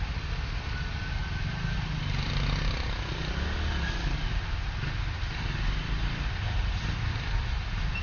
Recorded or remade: recorded